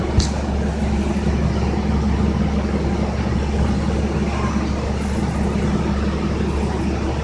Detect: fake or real real